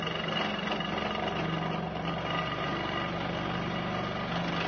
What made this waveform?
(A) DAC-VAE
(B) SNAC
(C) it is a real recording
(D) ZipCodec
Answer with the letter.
C